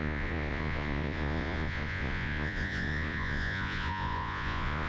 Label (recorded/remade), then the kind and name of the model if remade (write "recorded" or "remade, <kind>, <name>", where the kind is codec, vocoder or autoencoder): remade, vocoder, Vocos